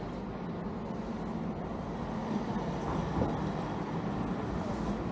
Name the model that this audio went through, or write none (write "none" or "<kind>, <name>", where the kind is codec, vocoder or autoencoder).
none